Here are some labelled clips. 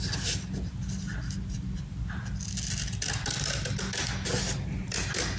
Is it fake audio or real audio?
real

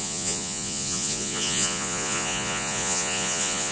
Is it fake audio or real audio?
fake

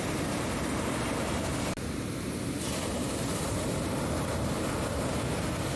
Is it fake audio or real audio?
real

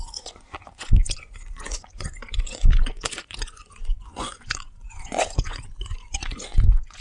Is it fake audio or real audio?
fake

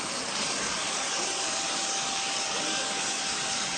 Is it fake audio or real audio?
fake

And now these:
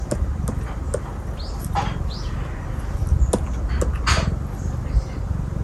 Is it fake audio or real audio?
real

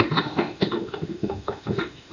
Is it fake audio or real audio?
fake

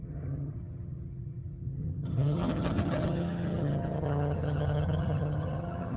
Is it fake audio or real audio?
fake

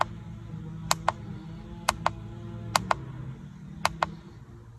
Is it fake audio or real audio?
real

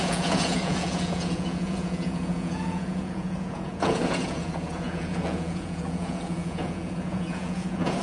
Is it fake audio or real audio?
fake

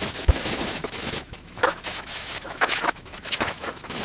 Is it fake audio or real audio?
fake